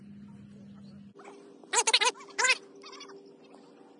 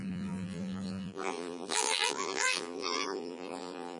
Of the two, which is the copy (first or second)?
second